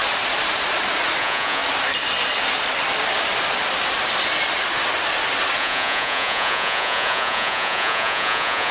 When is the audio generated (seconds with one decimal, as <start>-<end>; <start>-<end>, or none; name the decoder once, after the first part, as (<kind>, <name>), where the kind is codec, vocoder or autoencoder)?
1.2-1.6 (vocoder, Vocos); 5.6-8.7